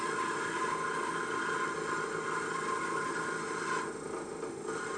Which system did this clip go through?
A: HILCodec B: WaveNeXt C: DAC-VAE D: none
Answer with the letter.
D